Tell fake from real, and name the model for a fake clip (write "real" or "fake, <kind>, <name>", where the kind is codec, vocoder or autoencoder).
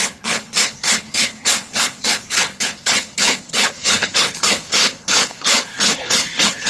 fake, codec, HILCodec